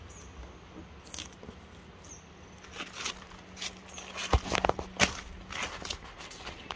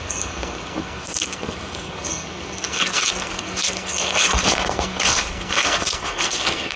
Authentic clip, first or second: first